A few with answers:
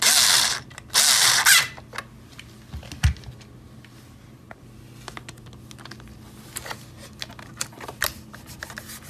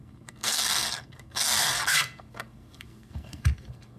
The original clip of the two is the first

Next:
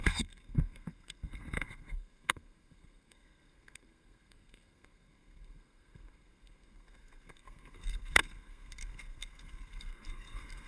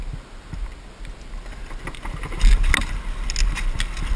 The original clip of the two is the second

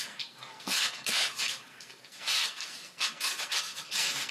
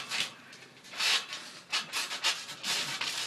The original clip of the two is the second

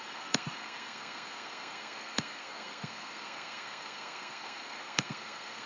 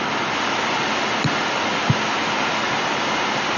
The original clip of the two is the second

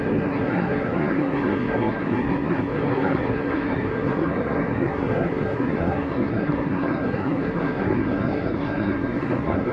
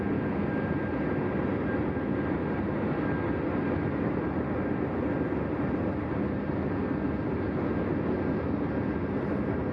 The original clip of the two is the second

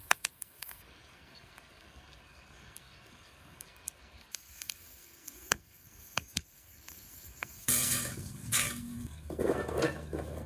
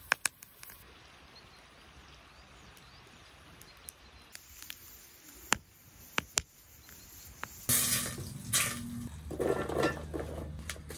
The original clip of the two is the second